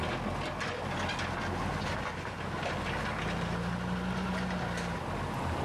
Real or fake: real